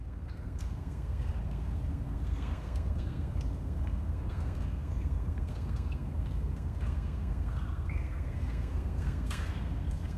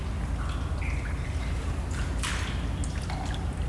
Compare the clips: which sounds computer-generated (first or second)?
first